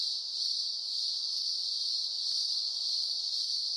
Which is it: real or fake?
fake